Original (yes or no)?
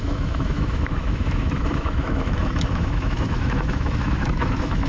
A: no